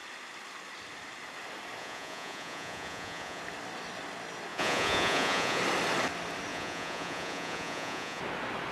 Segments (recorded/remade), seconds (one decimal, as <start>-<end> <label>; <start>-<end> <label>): 0.0-1.8 recorded; 1.8-3.4 remade; 3.4-4.5 recorded; 4.5-5.6 remade; 5.6-6.5 recorded; 6.5-8.2 remade; 8.2-8.7 recorded

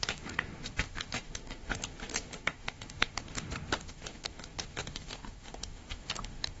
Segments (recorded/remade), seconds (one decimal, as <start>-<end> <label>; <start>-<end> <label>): 0.0-6.6 remade

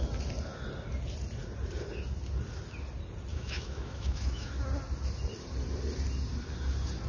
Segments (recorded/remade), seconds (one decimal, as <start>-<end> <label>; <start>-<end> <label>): 0.0-3.3 recorded; 3.3-4.5 remade; 4.5-7.1 recorded

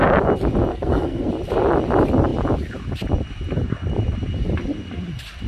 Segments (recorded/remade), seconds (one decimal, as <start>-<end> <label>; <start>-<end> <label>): 0.0-0.7 recorded; 0.7-1.3 remade; 1.3-5.5 recorded

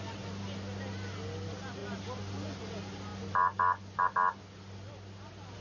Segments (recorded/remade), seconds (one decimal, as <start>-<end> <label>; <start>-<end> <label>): 0.0-5.6 recorded